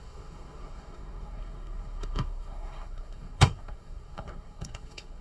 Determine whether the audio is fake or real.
fake